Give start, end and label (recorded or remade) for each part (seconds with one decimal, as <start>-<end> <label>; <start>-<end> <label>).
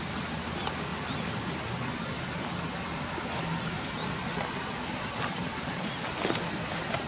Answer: 0.0-7.1 recorded